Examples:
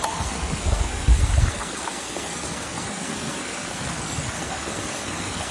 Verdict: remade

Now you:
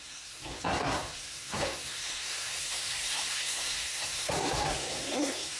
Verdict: remade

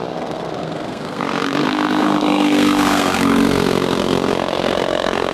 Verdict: remade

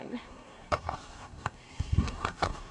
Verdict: remade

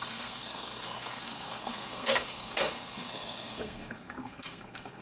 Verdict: remade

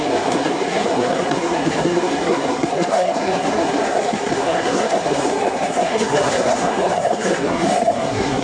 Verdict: remade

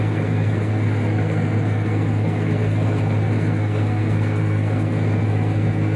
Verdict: remade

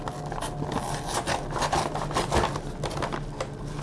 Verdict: recorded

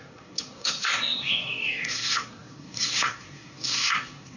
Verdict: remade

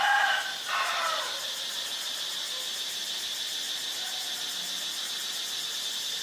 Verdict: recorded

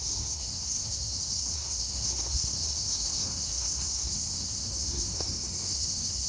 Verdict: remade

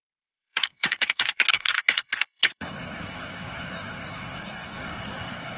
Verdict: remade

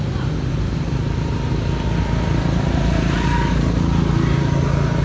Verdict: recorded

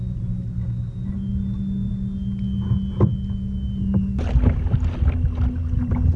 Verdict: recorded